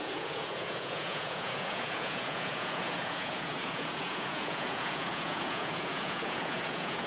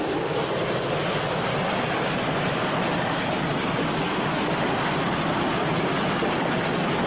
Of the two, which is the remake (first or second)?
first